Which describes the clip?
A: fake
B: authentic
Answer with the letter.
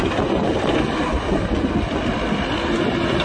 B